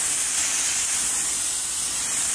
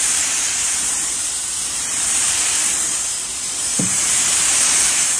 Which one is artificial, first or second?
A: second